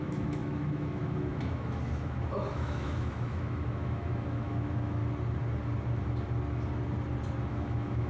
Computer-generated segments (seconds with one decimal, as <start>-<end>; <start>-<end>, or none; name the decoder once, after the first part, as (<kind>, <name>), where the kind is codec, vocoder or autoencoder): 0.0-5.0 (autoencoder, DAC-VAE); 7.5-8.1